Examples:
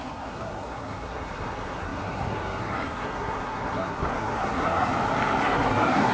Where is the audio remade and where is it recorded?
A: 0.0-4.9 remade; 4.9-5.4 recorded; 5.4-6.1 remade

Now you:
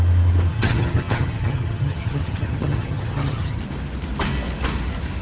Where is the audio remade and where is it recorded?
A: 0.0-0.5 recorded; 0.5-3.6 remade; 3.6-5.2 recorded

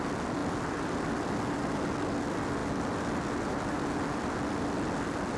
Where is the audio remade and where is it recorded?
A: 0.0-2.6 recorded; 2.6-3.1 remade; 3.1-5.4 recorded

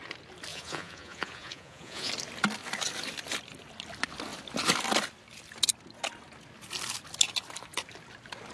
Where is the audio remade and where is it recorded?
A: 0.0-0.5 recorded; 0.5-2.1 remade; 2.1-8.5 recorded

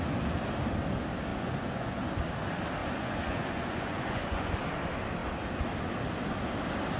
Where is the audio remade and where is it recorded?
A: 0.0-1.3 recorded; 1.3-2.1 remade; 2.1-2.8 recorded; 2.8-4.5 remade; 4.5-7.0 recorded

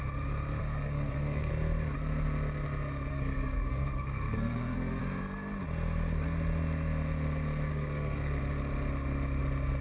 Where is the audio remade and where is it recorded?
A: 0.0-0.6 recorded; 0.6-1.5 remade; 1.5-3.1 recorded; 3.1-5.0 remade; 5.0-7.7 recorded; 7.7-8.4 remade; 8.4-9.8 recorded

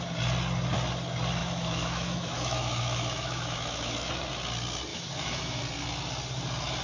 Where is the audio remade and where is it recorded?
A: 0.0-1.4 recorded; 1.4-4.1 remade; 4.1-4.9 recorded; 4.9-5.6 remade; 5.6-6.8 recorded

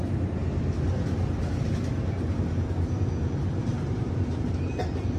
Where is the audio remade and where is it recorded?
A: 0.0-0.4 remade; 0.4-2.5 recorded; 2.5-5.2 remade